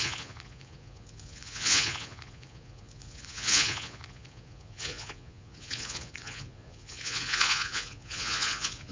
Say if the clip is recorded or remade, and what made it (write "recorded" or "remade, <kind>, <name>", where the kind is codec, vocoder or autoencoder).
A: remade, vocoder, Vocos